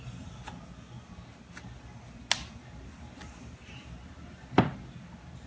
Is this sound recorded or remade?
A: recorded